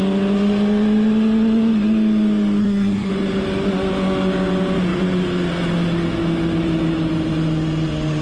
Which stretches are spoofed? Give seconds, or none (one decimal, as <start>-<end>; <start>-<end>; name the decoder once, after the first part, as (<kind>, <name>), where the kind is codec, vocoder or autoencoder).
2.6-3.1 (codec, SNAC)